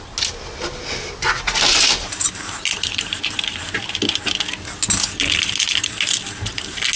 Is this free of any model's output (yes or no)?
yes